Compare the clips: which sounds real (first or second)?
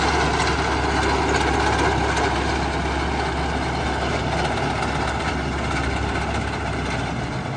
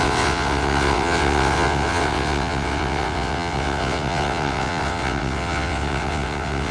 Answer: first